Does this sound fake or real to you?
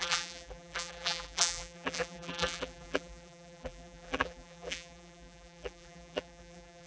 fake